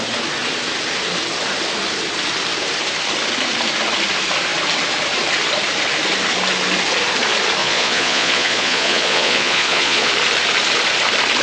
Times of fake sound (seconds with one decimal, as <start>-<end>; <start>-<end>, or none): 7.6-10.1